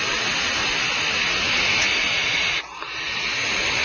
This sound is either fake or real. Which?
real